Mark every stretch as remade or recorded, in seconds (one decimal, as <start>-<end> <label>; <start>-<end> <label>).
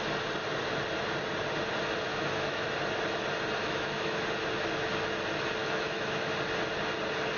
0.0-2.1 recorded; 2.1-2.7 remade; 2.7-3.6 recorded; 3.6-4.2 remade; 4.2-5.6 recorded; 5.6-6.3 remade; 6.3-7.4 recorded